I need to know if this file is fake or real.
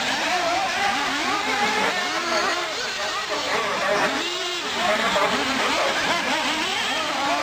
fake